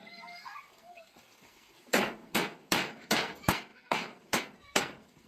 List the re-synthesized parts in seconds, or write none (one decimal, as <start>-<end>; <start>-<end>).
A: 0.0-5.3